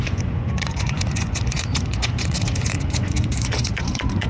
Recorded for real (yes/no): no